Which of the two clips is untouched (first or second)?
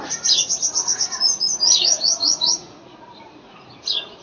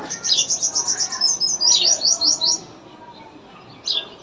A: second